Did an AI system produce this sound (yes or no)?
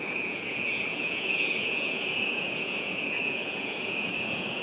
yes